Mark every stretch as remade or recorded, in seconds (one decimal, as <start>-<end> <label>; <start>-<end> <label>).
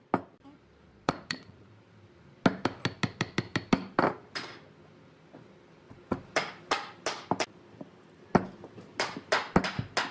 0.0-0.9 recorded; 0.9-1.7 remade; 1.7-10.1 recorded